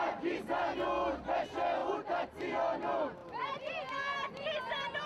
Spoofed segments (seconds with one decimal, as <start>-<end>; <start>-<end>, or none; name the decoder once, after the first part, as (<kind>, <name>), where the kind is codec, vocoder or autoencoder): 3.2-4.4 (vocoder, BigVGAN v2)